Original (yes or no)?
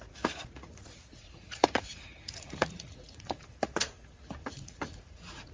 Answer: no